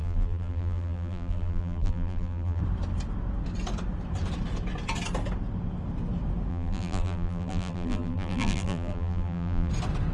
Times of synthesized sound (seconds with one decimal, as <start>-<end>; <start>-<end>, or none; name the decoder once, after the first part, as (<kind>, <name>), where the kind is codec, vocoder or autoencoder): 0.0-2.6 (vocoder, BigVGAN v2); 6.5-9.7